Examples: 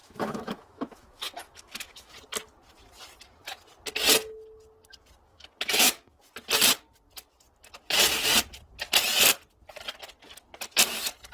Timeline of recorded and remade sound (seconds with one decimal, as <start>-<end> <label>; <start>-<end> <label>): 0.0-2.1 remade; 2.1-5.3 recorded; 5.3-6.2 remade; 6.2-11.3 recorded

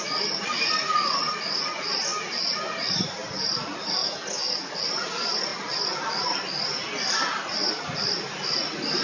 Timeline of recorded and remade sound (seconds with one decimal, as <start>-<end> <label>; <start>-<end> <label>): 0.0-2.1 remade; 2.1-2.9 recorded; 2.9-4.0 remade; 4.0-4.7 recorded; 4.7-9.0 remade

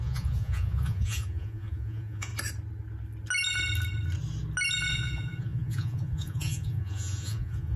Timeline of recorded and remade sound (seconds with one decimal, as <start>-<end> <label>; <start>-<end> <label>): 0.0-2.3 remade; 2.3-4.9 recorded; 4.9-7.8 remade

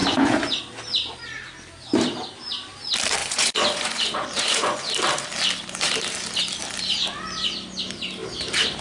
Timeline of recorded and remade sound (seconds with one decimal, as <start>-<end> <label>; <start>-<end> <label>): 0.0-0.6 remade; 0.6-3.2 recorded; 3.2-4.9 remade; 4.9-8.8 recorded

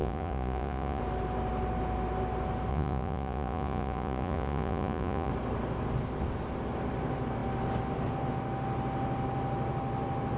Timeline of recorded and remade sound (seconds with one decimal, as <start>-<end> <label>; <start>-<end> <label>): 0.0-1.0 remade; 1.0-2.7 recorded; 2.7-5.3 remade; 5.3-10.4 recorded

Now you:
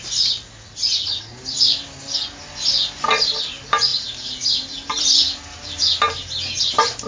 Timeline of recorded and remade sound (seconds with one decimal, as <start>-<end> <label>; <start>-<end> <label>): 0.0-3.9 recorded; 3.9-5.8 remade; 5.8-7.1 recorded

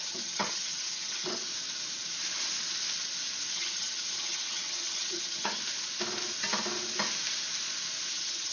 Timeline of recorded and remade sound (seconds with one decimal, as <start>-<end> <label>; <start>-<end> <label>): 0.0-1.5 remade; 1.5-3.5 recorded; 3.5-5.6 remade; 5.6-8.1 recorded; 8.1-8.5 remade